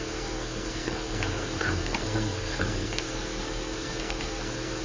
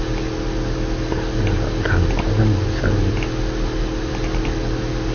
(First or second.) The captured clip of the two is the second